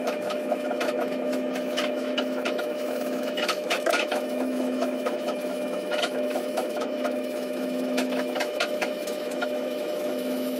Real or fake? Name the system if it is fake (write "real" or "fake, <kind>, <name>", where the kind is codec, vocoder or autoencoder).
fake, autoencoder, DAC-VAE